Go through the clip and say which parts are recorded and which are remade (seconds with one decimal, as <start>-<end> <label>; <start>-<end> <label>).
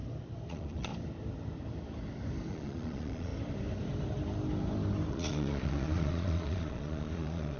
0.0-0.5 recorded; 0.5-0.9 remade; 0.9-2.5 recorded; 2.5-3.3 remade; 3.3-5.1 recorded; 5.1-7.6 remade